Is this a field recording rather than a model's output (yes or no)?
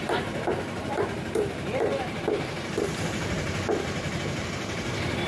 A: no